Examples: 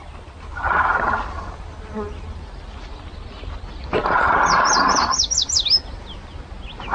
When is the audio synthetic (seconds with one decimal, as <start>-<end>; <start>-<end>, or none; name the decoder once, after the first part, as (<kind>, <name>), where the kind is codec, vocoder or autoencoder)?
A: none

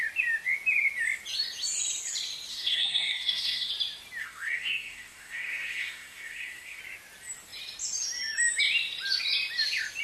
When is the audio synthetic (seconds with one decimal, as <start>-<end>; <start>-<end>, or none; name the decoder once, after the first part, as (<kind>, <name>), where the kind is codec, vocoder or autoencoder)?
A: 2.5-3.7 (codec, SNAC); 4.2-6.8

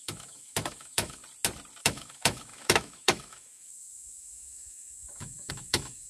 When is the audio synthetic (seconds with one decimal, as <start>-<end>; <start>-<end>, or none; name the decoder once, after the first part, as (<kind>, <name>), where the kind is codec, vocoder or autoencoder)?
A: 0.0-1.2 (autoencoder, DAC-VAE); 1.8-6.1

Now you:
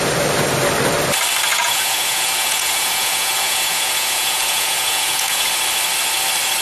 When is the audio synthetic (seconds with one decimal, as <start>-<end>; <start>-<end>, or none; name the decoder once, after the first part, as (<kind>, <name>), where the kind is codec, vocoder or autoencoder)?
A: 1.5-5.5 (vocoder, Vocos)

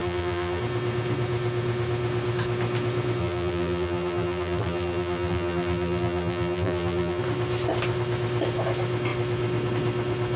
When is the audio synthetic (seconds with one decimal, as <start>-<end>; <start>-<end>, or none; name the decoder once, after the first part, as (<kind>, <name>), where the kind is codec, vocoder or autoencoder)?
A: 0.0-0.6 (vocoder, BigVGAN v2); 3.2-7.2